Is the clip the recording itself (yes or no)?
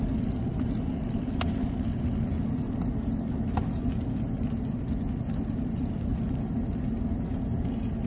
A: yes